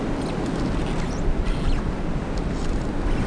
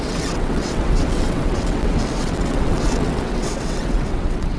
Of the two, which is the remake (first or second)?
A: second